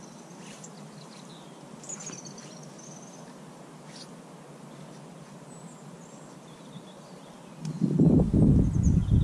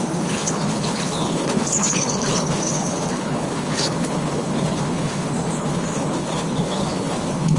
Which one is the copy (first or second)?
second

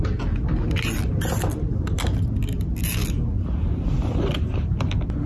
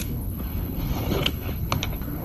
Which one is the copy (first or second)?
second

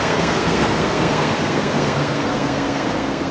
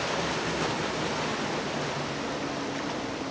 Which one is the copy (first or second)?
first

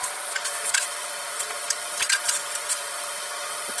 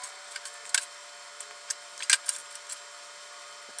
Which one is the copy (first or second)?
first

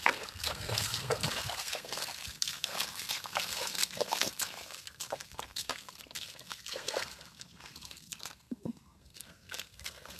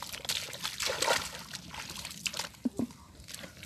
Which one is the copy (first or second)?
first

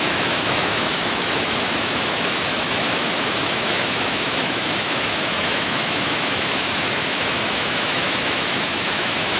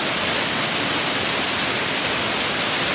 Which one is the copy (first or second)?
first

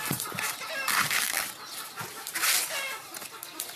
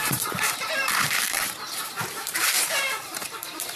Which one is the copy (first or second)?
second